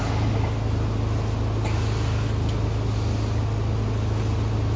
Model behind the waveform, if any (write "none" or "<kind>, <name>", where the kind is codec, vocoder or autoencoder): none